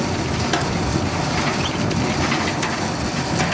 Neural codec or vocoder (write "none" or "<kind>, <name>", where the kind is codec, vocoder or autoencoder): none